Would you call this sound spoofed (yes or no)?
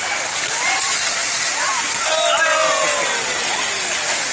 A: no